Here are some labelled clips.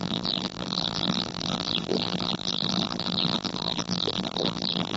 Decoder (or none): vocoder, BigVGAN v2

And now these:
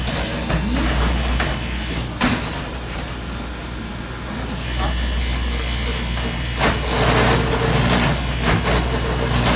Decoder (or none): none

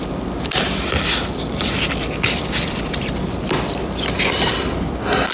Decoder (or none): vocoder, BigVGAN v2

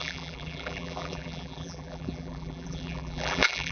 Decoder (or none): vocoder, BigVGAN v2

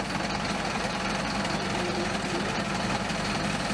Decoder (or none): vocoder, BigVGAN v2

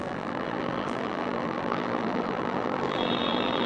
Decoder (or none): vocoder, BigVGAN v2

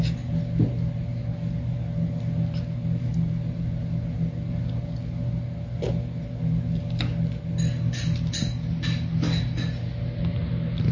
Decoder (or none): none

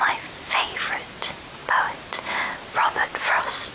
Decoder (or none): none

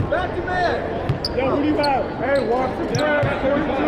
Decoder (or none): none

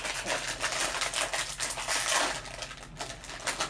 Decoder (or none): none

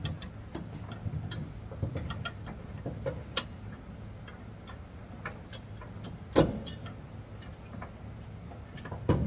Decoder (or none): none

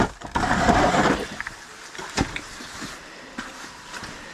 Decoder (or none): vocoder, BigVGAN v2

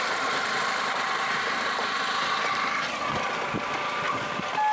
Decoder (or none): none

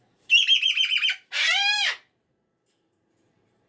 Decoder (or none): vocoder, BigVGAN v2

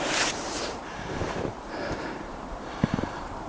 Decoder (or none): vocoder, BigVGAN v2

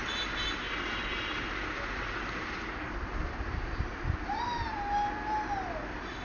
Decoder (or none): none